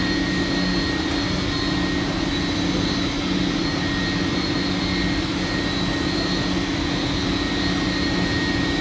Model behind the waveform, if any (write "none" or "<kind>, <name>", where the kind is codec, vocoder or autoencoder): none